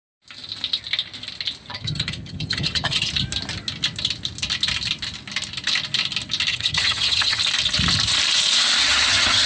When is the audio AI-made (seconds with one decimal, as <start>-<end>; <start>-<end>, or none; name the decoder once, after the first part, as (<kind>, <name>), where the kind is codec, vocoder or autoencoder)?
1.7-3.1 (vocoder, HiFi-GAN); 6.5-7.4; 8.8-9.5